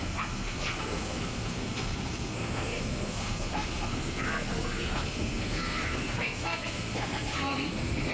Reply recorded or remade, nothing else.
remade